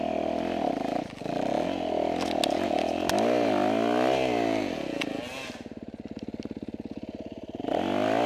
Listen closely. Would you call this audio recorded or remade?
recorded